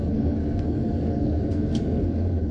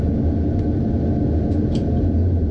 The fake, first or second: first